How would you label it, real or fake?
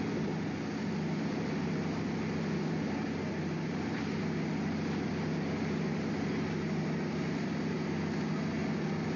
real